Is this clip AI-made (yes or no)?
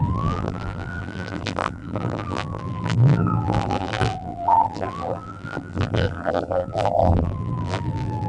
yes